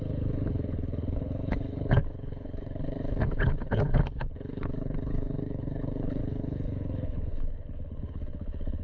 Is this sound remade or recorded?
remade